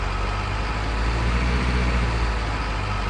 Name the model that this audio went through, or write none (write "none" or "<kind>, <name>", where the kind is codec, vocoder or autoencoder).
none